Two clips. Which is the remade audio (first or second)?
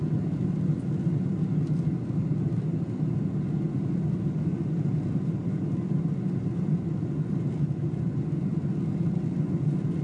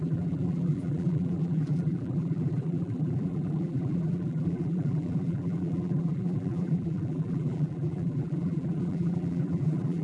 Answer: second